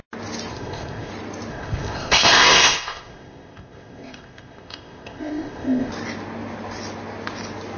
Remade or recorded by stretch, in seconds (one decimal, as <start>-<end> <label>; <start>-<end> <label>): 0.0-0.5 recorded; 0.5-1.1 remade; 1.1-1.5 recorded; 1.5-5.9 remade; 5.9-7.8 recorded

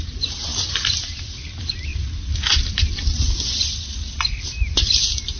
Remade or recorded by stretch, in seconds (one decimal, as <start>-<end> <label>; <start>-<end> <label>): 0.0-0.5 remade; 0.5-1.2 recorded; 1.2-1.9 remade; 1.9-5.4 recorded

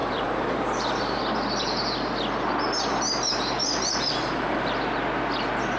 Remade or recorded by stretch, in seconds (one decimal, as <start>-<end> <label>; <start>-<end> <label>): 0.0-1.2 remade; 1.2-3.6 recorded; 3.6-4.7 remade; 4.7-5.8 recorded